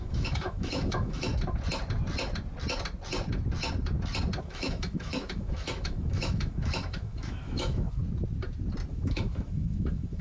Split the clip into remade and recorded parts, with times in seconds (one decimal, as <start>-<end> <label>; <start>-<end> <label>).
0.0-1.3 remade; 1.3-4.4 recorded; 4.4-8.0 remade; 8.0-8.9 recorded; 8.9-10.2 remade